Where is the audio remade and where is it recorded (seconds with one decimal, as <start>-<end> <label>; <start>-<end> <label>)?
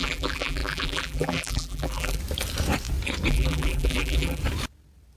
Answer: 0.0-2.2 remade; 2.2-3.3 recorded; 3.3-4.4 remade; 4.4-5.2 recorded